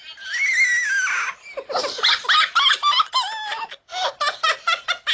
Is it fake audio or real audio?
real